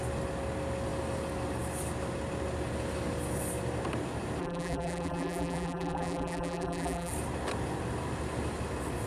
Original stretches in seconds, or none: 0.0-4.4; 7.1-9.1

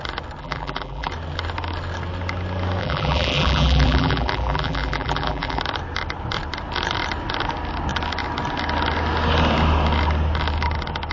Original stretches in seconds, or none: 0.0-0.4; 1.1-2.8; 5.6-11.1

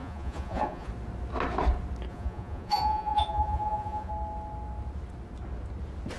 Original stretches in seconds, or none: 0.9-2.1; 4.1-6.2